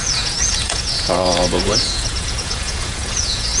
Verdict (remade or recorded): remade